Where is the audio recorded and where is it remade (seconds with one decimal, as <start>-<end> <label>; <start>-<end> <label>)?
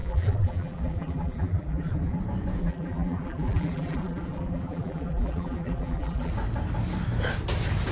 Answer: 0.0-2.2 remade; 2.2-2.6 recorded; 2.6-6.3 remade; 6.3-7.9 recorded